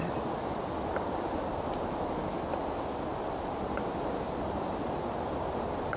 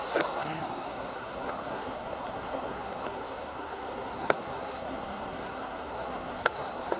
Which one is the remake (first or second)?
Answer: second